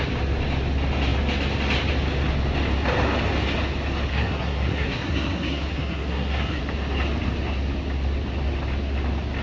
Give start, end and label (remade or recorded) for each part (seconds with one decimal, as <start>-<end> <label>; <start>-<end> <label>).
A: 0.0-4.1 recorded; 4.1-6.6 remade; 6.6-9.4 recorded